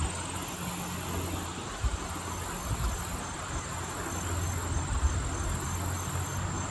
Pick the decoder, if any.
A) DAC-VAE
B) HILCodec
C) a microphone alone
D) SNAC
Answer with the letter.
C